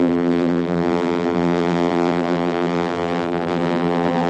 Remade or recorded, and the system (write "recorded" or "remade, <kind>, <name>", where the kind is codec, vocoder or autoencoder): remade, vocoder, BigVGAN v2